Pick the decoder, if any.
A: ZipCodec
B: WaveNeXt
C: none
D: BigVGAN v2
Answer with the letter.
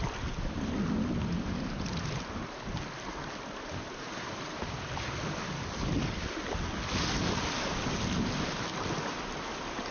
C